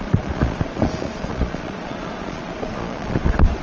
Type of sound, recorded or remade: remade